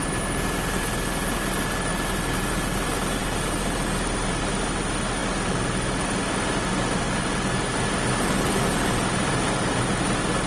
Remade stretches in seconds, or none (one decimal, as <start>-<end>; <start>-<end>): none